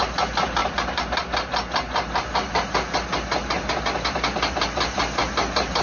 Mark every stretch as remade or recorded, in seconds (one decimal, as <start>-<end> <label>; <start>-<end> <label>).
0.0-5.8 recorded